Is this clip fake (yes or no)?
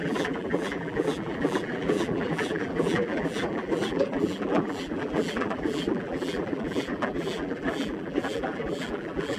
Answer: yes